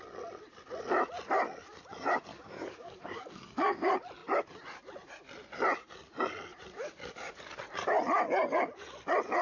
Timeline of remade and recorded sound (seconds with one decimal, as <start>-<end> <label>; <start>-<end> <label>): 0.0-2.3 recorded; 2.3-3.8 remade; 3.8-9.4 recorded